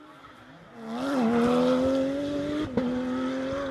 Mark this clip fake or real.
real